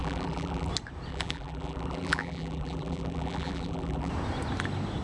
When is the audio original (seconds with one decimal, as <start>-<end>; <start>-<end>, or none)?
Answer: 0.7-1.1; 4.1-5.0

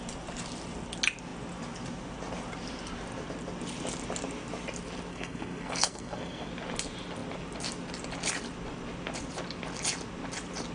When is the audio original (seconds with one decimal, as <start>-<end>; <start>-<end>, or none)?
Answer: 0.0-5.1; 6.5-10.7

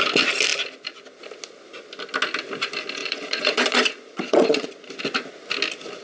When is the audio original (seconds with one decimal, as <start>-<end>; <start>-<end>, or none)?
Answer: 0.0-3.0; 4.9-6.0

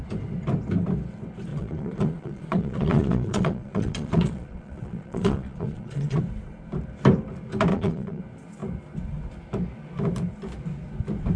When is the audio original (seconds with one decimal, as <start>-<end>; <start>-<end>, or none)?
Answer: 0.0-1.5; 6.2-7.7; 8.2-11.4

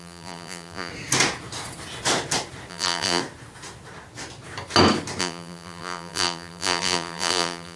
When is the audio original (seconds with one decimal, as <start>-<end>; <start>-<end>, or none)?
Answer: 0.9-2.7; 3.2-5.2

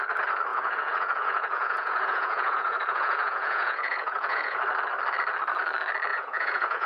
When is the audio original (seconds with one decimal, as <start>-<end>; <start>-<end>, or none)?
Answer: 0.0-0.5; 4.6-6.1

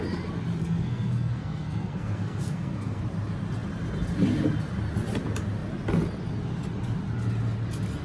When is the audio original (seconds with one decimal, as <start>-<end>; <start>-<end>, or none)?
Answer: 0.0-0.6; 3.0-8.0

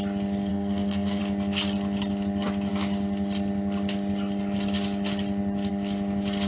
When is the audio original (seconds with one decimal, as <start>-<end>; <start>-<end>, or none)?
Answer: 0.0-0.5; 1.2-6.5